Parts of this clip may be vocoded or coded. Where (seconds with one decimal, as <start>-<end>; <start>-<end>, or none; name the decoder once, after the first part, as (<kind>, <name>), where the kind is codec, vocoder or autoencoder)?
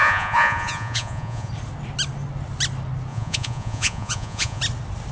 0.0-1.5 (vocoder, Vocos); 3.1-4.6